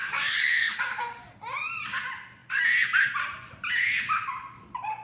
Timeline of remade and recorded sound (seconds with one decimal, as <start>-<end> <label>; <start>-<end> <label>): 0.0-1.2 remade; 1.2-5.0 recorded